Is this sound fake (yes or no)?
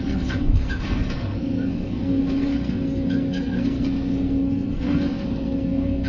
yes